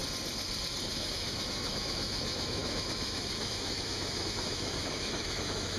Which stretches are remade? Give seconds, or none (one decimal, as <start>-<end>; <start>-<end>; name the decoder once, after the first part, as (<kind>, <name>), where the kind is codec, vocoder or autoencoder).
0.9-5.8 (autoencoder, DAC-VAE)